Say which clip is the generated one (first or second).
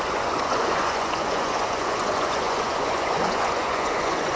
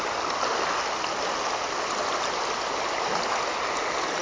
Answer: first